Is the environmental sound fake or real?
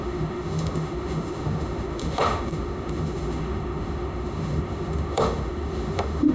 fake